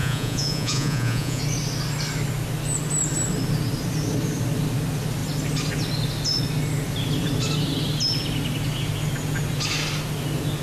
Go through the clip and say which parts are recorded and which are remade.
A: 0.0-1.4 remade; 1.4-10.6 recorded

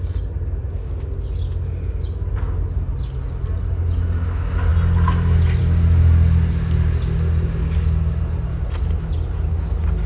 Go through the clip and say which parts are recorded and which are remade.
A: 0.0-10.1 recorded

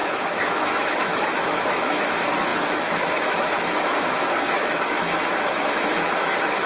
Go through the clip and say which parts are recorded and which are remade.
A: 0.0-6.7 remade

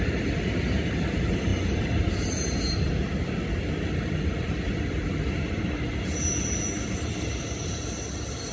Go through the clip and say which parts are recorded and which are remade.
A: 0.0-8.5 recorded